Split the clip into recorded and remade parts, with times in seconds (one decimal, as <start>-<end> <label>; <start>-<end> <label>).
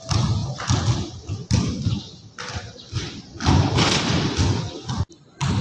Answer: 0.0-5.6 recorded